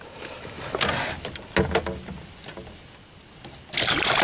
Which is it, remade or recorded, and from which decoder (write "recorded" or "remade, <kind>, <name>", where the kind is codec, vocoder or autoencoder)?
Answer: recorded